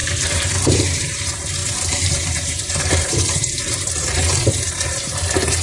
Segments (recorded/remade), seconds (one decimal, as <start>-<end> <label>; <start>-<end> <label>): 0.0-5.6 remade